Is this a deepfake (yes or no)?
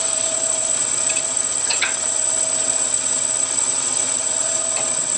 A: yes